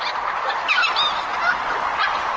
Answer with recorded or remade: recorded